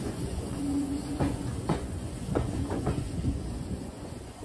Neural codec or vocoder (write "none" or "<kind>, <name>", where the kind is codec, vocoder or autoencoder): vocoder, Vocos